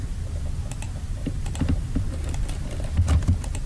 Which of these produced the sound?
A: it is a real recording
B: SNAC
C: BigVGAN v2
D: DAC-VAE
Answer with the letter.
A